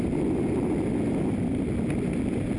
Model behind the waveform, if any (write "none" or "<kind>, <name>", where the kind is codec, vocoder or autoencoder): none